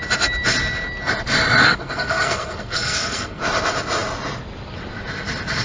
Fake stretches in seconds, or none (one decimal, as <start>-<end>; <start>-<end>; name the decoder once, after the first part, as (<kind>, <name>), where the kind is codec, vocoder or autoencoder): 1.6-3.4 (codec, SNAC)